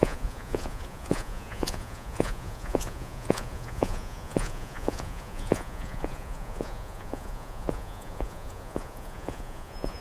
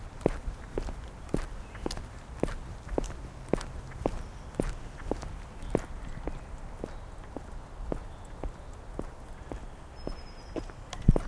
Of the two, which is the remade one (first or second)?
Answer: first